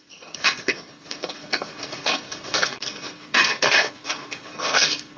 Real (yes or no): no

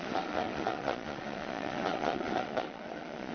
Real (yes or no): no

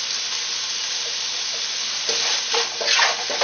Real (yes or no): yes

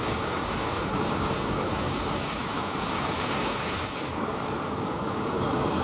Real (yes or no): no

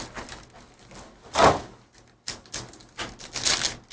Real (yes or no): yes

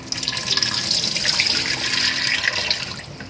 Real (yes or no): yes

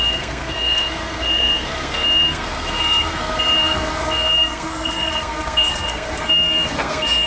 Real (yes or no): no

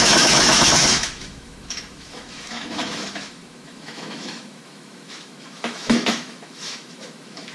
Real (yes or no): no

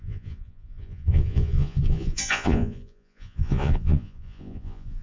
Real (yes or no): no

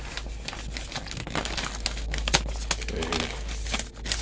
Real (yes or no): yes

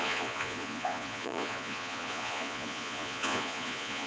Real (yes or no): no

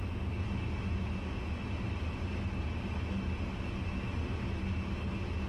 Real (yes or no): yes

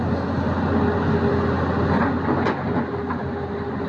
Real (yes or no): yes